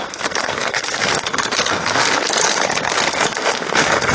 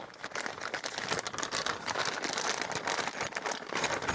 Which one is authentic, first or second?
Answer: second